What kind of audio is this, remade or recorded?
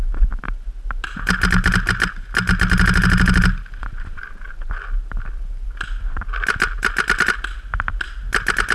recorded